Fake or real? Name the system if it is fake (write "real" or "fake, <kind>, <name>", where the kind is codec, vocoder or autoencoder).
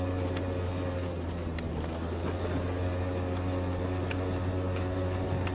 real